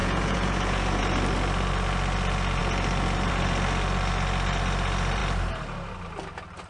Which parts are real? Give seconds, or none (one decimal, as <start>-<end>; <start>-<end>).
1.0-6.7